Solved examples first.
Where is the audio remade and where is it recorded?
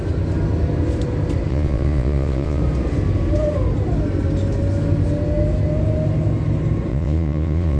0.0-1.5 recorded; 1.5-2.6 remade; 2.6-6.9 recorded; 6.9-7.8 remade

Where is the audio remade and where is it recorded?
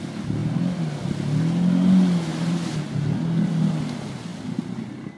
0.0-5.2 recorded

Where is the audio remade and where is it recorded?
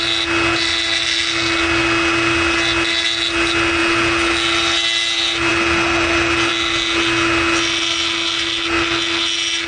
0.0-9.7 recorded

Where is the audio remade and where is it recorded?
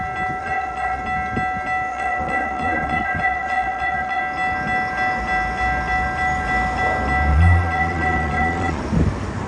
0.0-0.4 recorded; 0.4-1.0 remade; 1.0-1.9 recorded; 1.9-4.2 remade; 4.2-7.3 recorded; 7.3-8.8 remade; 8.8-9.5 recorded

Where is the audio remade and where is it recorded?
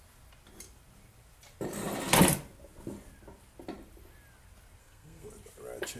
0.0-4.8 recorded; 4.8-5.3 remade; 5.3-6.0 recorded